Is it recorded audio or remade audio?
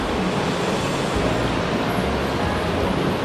recorded